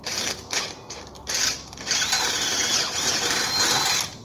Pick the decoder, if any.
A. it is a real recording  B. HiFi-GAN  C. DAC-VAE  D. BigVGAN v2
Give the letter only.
A